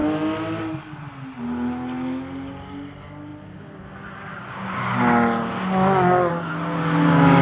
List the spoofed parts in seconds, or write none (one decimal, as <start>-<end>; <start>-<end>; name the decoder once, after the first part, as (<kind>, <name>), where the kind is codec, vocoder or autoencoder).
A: none